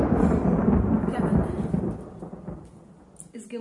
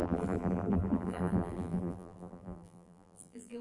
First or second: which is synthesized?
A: second